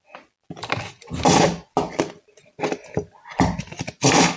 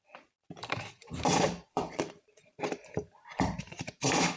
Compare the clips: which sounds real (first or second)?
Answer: first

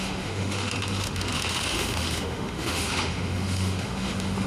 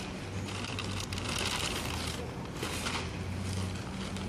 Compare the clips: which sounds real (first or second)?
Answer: second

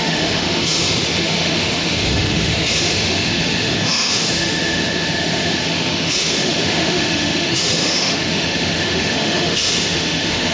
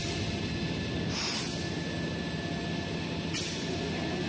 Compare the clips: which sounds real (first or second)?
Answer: second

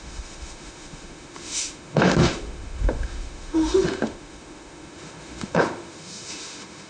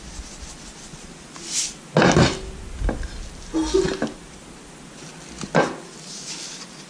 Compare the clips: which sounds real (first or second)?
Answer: second